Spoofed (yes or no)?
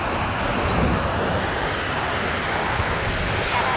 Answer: no